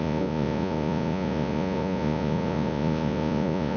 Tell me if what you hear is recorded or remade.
remade